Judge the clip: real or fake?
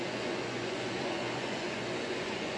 fake